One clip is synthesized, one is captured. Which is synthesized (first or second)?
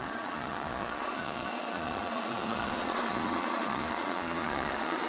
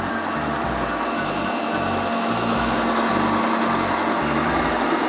first